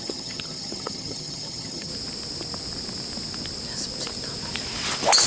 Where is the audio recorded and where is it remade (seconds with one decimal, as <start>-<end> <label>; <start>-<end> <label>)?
0.0-1.9 remade; 1.9-5.3 recorded